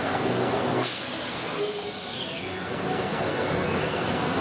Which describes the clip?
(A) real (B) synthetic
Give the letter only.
B